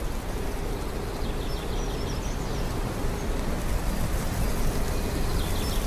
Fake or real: real